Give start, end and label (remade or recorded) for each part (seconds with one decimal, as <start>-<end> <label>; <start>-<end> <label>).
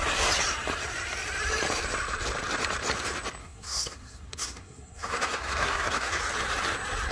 0.0-3.4 recorded; 3.4-6.2 remade; 6.2-7.1 recorded